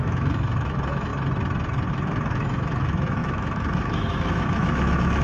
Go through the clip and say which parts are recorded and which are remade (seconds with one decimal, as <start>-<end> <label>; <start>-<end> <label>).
0.0-1.1 remade; 1.1-1.9 recorded; 1.9-5.2 remade